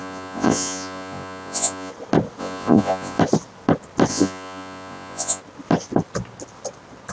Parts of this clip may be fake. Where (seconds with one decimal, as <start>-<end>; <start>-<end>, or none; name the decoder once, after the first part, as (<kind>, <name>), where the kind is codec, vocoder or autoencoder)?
0.0-1.9 (vocoder, Vocos); 2.4-3.2; 4.1-5.4